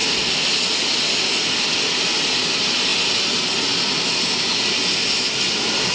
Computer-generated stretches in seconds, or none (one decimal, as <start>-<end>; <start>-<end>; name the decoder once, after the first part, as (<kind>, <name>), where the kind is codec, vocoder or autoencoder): none